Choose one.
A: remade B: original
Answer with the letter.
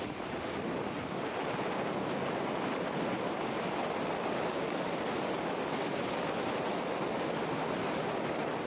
B